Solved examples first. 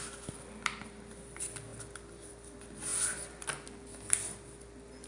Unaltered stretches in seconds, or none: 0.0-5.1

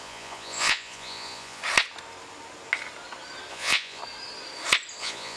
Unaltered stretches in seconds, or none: 1.6-3.5; 4.0-5.0